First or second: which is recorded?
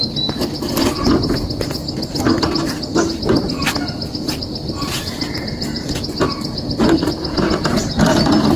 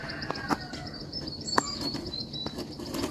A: first